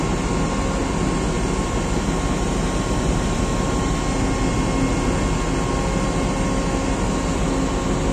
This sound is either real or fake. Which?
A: real